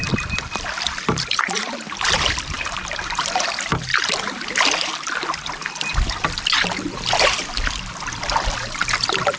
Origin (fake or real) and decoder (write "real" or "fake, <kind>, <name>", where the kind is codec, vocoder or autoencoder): real